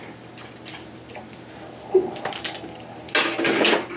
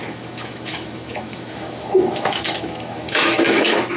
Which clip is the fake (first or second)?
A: second